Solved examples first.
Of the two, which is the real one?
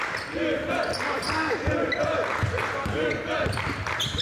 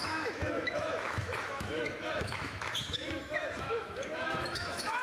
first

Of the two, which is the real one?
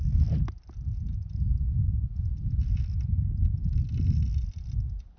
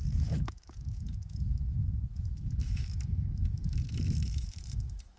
first